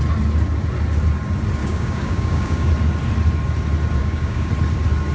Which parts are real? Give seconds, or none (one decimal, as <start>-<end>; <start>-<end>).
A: 0.0-1.6; 2.7-4.0; 4.5-5.1